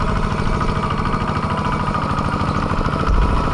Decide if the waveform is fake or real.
real